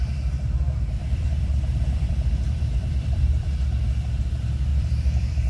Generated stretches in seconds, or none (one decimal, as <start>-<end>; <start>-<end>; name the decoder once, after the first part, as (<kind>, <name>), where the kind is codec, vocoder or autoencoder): 1.0-3.6 (vocoder, BigVGAN v2); 4.7-5.5